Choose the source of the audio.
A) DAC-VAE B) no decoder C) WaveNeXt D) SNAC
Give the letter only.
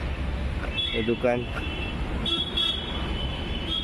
B